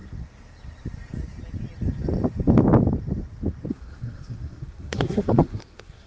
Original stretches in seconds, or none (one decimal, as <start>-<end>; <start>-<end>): 0.0-3.7